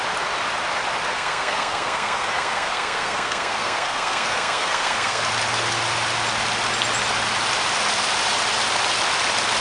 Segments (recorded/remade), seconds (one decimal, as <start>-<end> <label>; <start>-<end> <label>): 0.0-1.1 recorded; 1.1-5.2 remade; 5.2-9.6 recorded